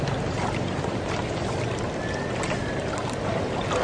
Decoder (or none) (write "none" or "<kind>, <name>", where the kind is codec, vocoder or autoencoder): none